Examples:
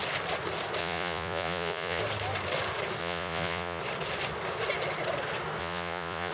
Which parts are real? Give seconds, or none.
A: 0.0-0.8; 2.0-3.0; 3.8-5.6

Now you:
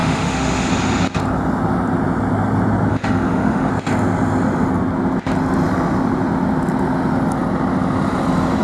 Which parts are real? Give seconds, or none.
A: 0.7-2.9; 3.7-8.6

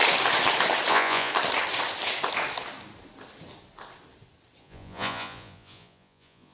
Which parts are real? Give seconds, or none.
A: 0.0-0.9; 1.3-4.6